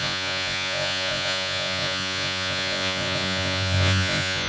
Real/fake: fake